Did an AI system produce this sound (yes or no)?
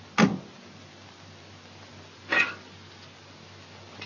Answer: no